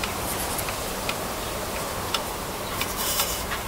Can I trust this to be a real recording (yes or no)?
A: no